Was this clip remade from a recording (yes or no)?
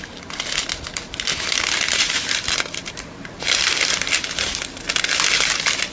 no